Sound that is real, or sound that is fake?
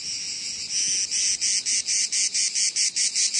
real